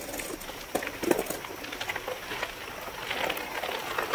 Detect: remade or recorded recorded